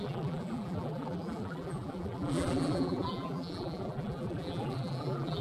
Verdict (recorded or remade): remade